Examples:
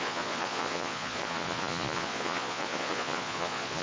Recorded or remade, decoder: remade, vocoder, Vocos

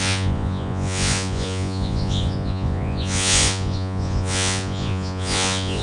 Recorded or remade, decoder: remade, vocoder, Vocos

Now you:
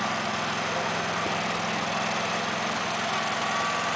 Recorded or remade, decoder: recorded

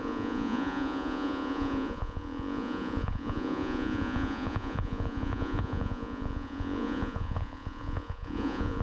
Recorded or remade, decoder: remade, vocoder, Vocos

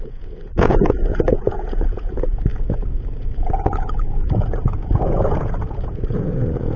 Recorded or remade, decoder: remade, vocoder, Vocos